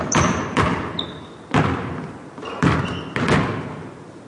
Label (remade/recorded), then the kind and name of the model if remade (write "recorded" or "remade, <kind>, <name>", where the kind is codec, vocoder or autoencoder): recorded